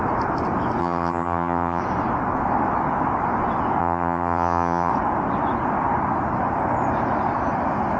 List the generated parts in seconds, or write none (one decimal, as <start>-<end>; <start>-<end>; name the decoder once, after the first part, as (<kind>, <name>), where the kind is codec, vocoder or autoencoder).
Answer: 0.8-1.8 (vocoder, HiFi-GAN); 3.8-4.9